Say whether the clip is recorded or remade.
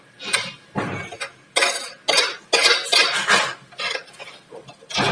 recorded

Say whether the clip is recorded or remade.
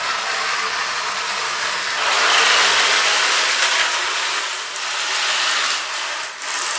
recorded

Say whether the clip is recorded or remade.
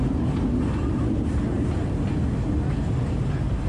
recorded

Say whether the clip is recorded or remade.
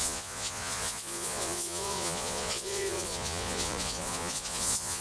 remade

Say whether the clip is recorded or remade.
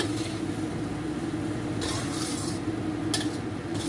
recorded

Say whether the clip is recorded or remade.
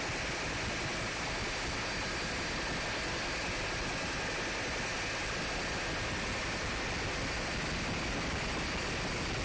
recorded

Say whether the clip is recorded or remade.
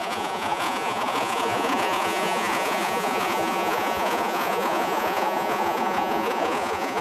remade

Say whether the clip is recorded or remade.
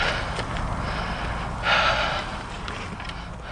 recorded